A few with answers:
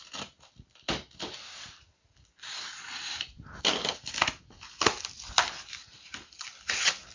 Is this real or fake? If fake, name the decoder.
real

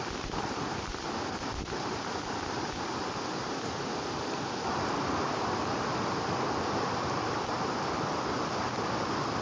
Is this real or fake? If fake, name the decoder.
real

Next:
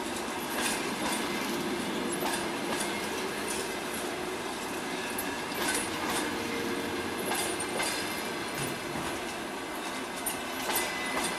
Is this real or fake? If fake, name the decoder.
real